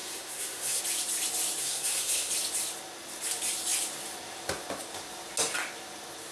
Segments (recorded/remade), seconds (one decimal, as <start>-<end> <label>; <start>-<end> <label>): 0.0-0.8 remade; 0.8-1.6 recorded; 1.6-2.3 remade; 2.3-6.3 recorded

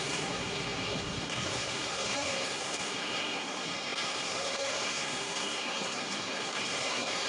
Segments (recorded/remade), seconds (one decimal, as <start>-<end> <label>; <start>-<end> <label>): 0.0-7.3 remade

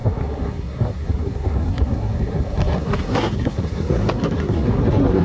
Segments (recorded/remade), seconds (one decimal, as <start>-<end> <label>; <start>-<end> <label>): 0.0-5.2 remade

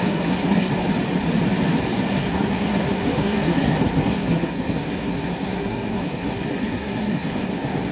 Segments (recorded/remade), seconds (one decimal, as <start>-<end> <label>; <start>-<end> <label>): 0.0-0.7 remade; 0.7-2.1 recorded; 2.1-7.9 remade

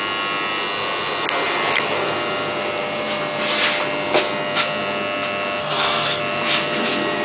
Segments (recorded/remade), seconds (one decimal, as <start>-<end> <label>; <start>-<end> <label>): 0.0-5.6 recorded; 5.6-6.2 remade; 6.2-7.2 recorded

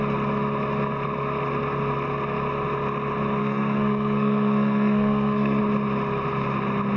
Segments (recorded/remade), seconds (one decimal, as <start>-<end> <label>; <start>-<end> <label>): 0.0-3.4 recorded; 3.4-5.6 remade; 5.6-7.0 recorded

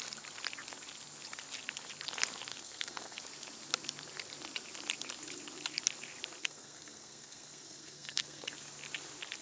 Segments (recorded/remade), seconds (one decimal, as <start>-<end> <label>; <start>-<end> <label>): 0.0-2.5 recorded; 2.5-3.2 remade; 3.2-6.4 recorded; 6.4-8.5 remade; 8.5-9.4 recorded

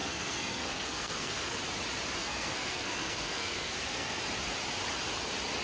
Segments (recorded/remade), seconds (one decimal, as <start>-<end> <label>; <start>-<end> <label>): 0.0-1.6 remade; 1.6-2.2 recorded; 2.2-4.2 remade; 4.2-5.6 recorded